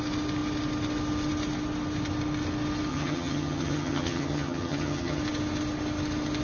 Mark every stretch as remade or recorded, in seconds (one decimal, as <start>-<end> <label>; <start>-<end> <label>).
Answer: 0.0-2.9 recorded; 2.9-5.2 remade; 5.2-6.4 recorded